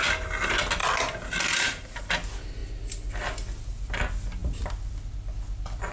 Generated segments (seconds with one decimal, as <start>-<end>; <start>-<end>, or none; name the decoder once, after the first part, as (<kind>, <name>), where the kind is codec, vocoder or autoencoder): none